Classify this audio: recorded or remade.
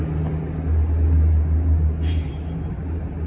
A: recorded